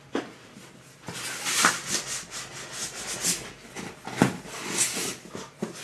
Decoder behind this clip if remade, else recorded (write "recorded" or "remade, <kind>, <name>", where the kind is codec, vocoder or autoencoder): recorded